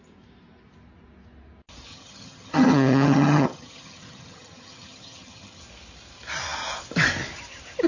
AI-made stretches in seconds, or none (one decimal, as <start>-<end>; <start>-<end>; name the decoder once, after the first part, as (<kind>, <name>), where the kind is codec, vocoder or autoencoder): 1.9-5.6 (vocoder, HiFi-GAN)